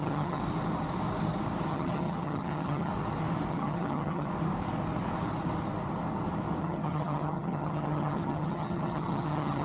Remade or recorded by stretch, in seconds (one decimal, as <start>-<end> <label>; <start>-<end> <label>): 0.0-0.4 remade; 0.4-1.7 recorded; 1.7-2.9 remade; 2.9-3.5 recorded; 3.5-4.3 remade; 4.3-6.6 recorded; 6.6-9.6 remade